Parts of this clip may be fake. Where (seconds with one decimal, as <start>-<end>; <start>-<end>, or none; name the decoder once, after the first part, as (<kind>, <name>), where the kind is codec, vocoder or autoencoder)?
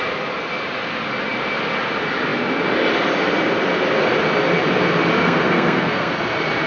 5.2-6.1 (codec, SNAC)